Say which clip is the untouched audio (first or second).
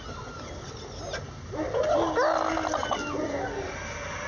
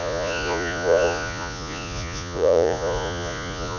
first